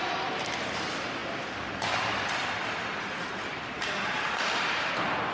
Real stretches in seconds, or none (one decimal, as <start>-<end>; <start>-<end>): 0.0-5.3